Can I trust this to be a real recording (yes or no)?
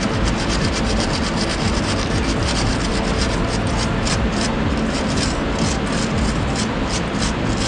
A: yes